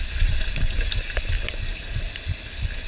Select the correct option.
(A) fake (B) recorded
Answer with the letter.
B